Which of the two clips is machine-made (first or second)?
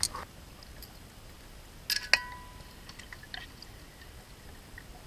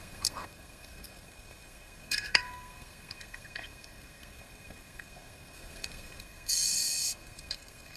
second